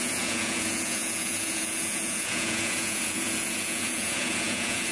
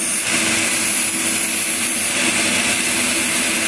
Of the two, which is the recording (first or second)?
second